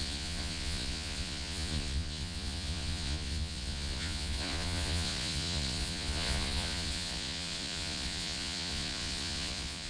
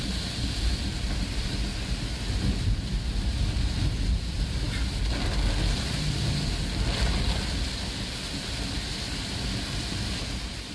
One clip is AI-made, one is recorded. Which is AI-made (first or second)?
first